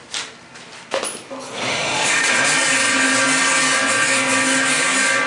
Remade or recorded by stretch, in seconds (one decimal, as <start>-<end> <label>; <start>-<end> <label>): 0.0-1.7 recorded; 1.7-2.3 remade; 2.3-5.3 recorded